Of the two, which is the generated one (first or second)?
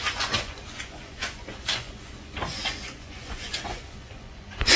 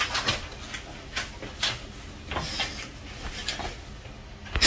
first